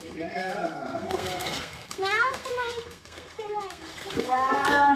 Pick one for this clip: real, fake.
fake